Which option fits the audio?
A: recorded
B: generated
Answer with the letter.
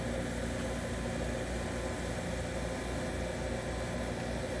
A